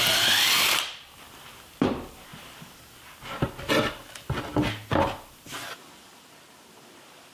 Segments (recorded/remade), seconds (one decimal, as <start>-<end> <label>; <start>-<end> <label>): 0.0-7.3 recorded